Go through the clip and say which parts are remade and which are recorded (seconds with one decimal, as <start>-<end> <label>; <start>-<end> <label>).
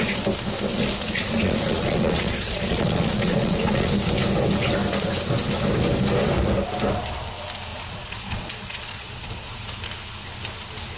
0.0-1.0 recorded; 1.0-3.9 remade; 3.9-7.7 recorded; 7.7-9.7 remade; 9.7-11.0 recorded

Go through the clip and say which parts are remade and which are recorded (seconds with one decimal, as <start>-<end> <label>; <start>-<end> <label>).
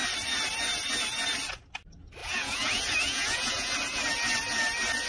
0.0-2.2 recorded; 2.2-3.7 remade; 3.7-5.1 recorded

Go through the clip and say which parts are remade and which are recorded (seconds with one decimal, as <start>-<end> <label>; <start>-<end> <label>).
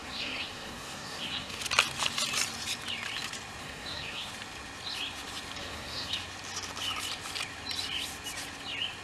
0.0-1.6 remade; 1.6-3.6 recorded; 3.6-4.3 remade; 4.3-5.6 recorded; 5.6-6.1 remade; 6.1-9.0 recorded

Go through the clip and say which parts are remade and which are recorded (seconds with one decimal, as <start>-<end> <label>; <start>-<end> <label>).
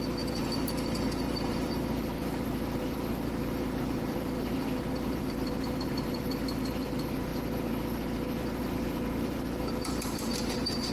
0.0-7.3 remade; 7.3-8.4 recorded; 8.4-10.9 remade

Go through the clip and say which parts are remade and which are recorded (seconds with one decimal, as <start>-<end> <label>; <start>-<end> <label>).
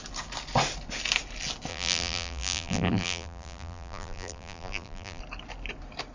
0.0-1.7 recorded; 1.7-5.2 remade; 5.2-6.1 recorded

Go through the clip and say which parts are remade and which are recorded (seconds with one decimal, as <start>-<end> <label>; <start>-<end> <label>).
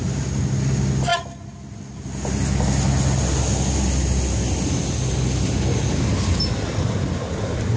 0.0-7.8 recorded